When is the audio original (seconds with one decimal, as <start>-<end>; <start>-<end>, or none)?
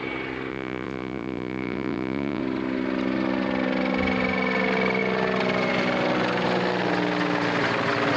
0.0-0.5; 2.4-8.2